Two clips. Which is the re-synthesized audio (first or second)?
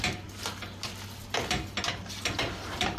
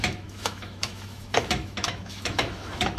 second